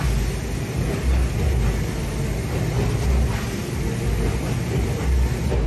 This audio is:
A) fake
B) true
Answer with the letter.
B